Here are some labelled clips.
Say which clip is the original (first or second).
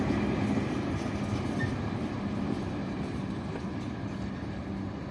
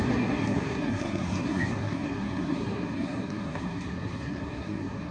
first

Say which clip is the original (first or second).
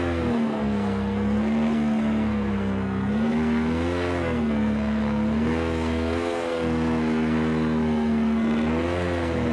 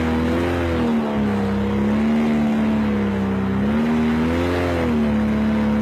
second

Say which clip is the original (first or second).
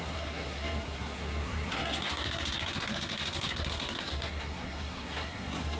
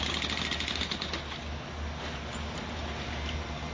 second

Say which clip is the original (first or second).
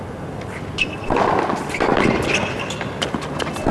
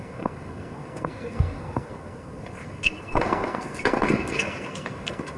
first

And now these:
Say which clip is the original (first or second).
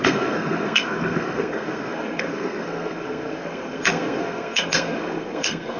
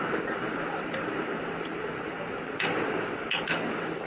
second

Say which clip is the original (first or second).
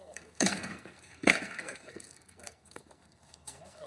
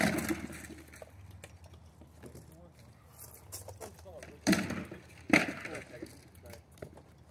second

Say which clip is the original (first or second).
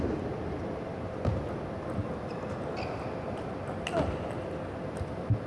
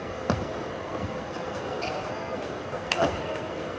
first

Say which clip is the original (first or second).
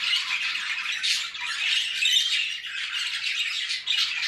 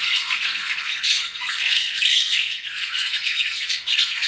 first